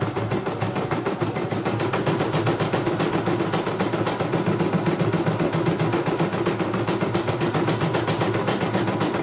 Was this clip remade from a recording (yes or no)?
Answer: no